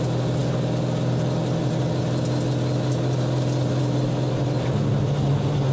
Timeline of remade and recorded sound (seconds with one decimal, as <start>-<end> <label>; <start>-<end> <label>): 0.0-5.7 recorded